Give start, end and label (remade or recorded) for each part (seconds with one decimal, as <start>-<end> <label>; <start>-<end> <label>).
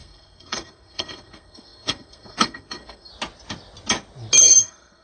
0.0-3.1 remade; 3.1-4.4 recorded; 4.4-5.0 remade